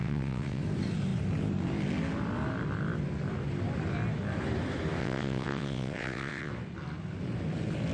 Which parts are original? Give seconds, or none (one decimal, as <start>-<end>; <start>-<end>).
0.6-5.0; 6.5-7.9